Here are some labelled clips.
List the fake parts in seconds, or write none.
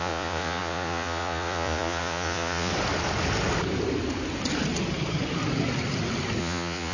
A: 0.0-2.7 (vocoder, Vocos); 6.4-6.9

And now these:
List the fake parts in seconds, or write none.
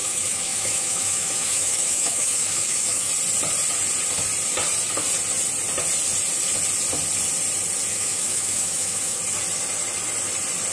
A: 0.0-3.1 (autoencoder, DAC-VAE); 7.9-9.2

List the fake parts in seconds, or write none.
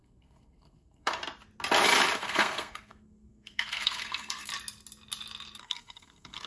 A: 0.0-1.2 (codec, SNAC); 2.2-4.5; 5.6-6.5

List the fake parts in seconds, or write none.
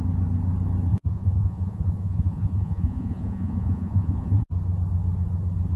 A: 0.9-4.4 (vocoder, Vocos)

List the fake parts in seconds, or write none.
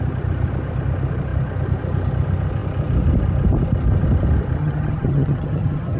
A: 4.6-6.0 (vocoder, HiFi-GAN)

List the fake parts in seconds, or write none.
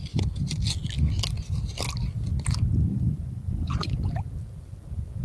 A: 2.9-4.1 (vocoder, Vocos)